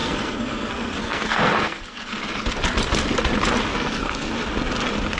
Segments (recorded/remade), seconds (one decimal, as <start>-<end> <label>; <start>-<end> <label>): 0.0-2.2 remade; 2.2-3.7 recorded; 3.7-4.3 remade; 4.3-5.2 recorded